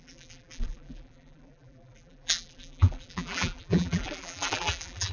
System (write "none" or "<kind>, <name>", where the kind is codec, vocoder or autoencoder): vocoder, BigVGAN v2